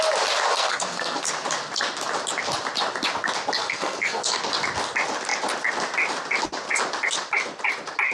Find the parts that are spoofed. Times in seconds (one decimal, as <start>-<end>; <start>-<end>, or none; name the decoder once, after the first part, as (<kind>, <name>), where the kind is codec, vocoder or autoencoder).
0.5-1.2 (codec, SNAC); 3.6-4.4

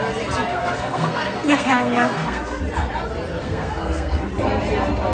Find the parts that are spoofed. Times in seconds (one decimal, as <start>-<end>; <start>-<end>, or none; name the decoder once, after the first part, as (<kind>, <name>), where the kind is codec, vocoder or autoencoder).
0.5-2.6 (codec, SNAC); 3.4-4.3